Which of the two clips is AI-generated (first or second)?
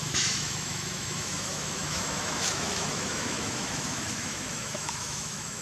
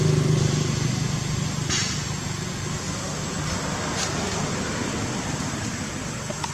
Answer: first